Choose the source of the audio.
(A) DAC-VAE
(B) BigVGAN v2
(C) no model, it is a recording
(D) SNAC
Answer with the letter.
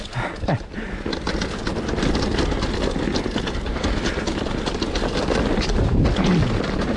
C